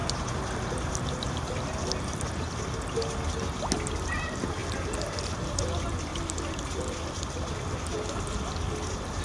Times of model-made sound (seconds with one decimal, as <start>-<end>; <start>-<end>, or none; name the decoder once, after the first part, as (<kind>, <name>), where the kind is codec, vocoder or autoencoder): 0.0-0.7 (vocoder, BigVGAN v2); 4.6-5.6